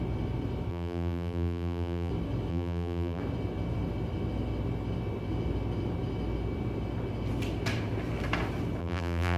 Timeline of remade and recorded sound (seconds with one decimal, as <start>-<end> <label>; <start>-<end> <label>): 0.0-0.7 recorded; 0.7-2.1 remade; 2.1-2.5 recorded; 2.5-3.2 remade; 3.2-8.8 recorded; 8.8-9.4 remade